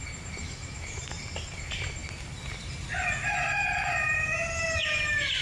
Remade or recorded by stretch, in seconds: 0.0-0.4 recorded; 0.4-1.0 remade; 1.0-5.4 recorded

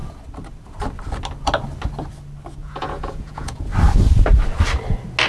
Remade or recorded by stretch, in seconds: 0.0-2.6 recorded; 2.6-3.7 remade; 3.7-5.3 recorded

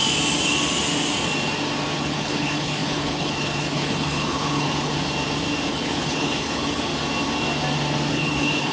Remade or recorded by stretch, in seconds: 0.0-2.0 recorded; 2.0-4.9 remade; 4.9-5.7 recorded; 5.7-6.9 remade; 6.9-8.1 recorded; 8.1-8.7 remade

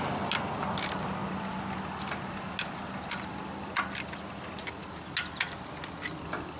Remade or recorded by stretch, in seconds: 0.0-6.6 recorded

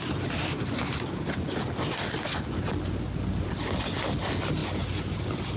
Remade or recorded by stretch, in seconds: 0.0-4.6 recorded; 4.6-5.6 remade